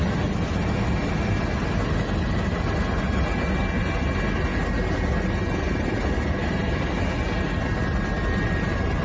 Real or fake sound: real